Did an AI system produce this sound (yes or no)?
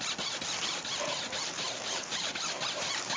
no